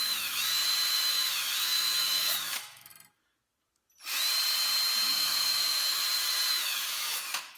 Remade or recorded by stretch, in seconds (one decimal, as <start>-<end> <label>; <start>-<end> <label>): 0.0-0.5 remade; 0.5-1.1 recorded; 1.1-2.9 remade; 2.9-5.1 recorded; 5.1-6.0 remade; 6.0-6.5 recorded; 6.5-7.6 remade